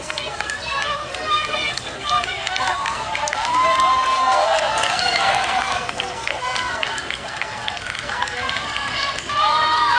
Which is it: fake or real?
fake